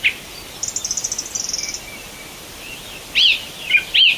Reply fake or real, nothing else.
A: real